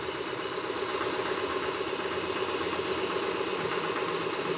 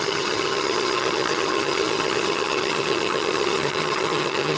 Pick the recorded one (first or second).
first